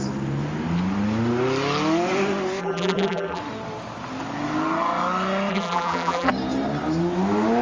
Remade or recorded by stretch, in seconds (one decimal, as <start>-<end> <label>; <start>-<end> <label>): 0.0-2.6 recorded; 2.6-3.4 remade; 3.4-5.5 recorded; 5.5-6.3 remade; 6.3-7.6 recorded